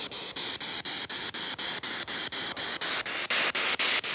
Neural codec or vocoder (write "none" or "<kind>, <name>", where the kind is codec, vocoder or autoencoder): none